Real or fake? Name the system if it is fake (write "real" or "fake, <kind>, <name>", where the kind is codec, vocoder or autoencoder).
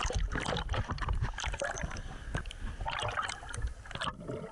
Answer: real